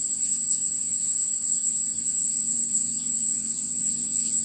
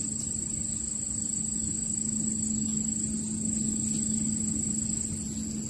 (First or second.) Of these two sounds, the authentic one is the second